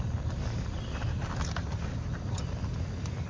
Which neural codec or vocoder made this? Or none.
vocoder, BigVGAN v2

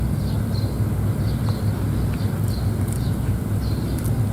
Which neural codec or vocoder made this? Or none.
none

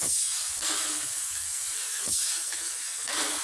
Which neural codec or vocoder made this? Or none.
codec, SNAC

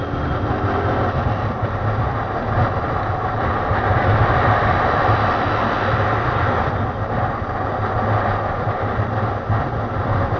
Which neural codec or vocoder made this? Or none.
none